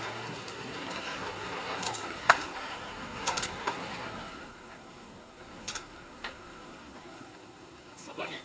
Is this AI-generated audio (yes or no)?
yes